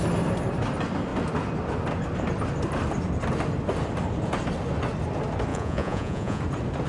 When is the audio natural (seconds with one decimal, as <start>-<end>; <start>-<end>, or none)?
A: 0.0-5.5; 6.4-6.9